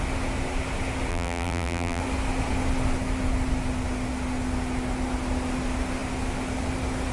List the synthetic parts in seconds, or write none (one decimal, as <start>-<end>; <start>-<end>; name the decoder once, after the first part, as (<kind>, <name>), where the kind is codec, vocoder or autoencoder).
1.1-2.0 (vocoder, BigVGAN v2)